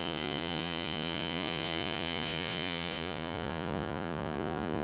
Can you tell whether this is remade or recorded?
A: remade